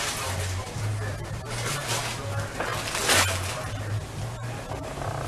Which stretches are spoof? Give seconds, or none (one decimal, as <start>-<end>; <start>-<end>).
none

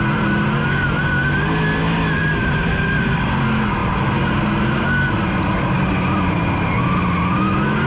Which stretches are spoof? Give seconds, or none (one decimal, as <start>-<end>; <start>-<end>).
none

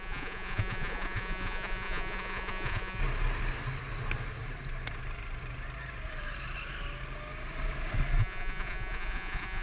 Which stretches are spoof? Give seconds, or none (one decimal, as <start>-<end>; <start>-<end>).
0.0-3.0; 8.2-9.6

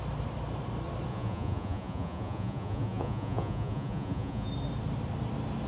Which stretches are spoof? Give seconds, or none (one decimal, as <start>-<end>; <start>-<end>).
1.1-4.5

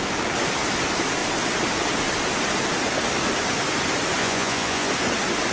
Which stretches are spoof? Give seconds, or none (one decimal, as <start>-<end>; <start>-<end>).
4.2-4.9

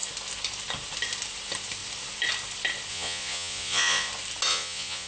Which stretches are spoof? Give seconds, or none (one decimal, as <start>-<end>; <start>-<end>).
2.9-4.1; 4.5-5.1